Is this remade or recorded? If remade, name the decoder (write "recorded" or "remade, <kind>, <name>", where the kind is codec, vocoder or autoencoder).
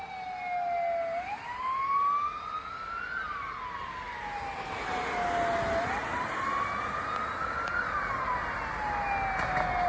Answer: recorded